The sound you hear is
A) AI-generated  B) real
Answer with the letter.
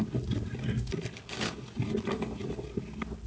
B